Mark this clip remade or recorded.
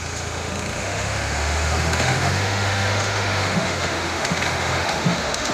remade